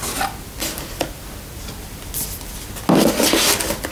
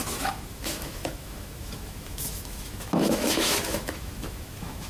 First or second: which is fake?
second